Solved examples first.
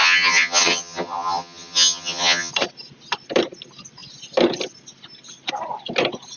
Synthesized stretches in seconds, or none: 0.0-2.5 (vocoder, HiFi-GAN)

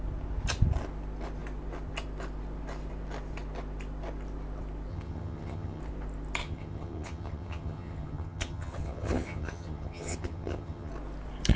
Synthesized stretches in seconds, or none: 4.9-5.8 (vocoder, HiFi-GAN); 6.4-10.9

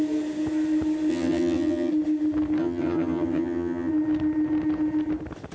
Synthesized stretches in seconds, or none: 1.1-1.9 (vocoder, HiFi-GAN); 2.6-3.9